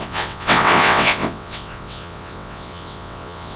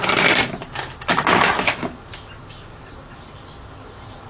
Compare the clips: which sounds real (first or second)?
second